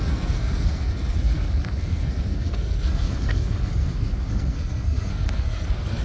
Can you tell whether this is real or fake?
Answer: fake